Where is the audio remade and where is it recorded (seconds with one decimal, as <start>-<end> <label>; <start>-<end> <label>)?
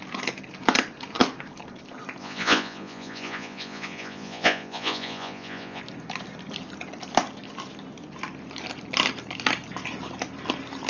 0.0-2.2 recorded; 2.2-5.8 remade; 5.8-10.9 recorded